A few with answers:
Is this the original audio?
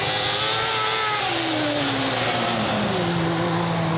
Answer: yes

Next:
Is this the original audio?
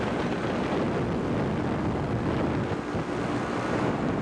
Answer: yes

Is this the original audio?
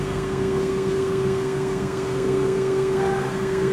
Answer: no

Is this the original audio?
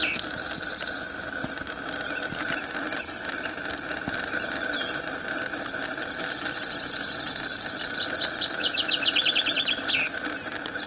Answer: yes